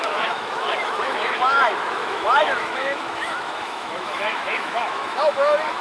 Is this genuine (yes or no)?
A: no